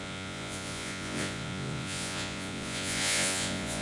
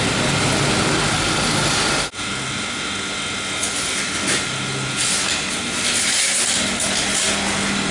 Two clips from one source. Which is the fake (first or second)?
first